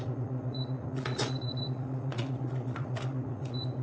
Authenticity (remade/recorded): remade